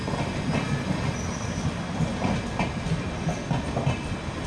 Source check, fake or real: real